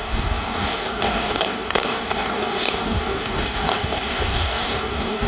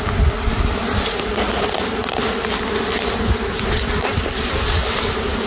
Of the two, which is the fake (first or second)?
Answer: first